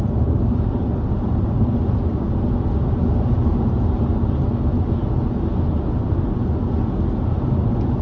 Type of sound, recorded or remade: recorded